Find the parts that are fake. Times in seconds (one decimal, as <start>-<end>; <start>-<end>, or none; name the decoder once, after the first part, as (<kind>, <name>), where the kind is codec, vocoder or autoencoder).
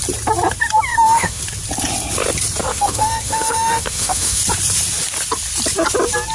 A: 0.9-1.4 (autoencoder, DAC-VAE); 2.7-4.4